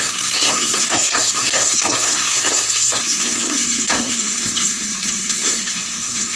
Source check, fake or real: fake